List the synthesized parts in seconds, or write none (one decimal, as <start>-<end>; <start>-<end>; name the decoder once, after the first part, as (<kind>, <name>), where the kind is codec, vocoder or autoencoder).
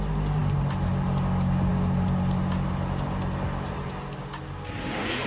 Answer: none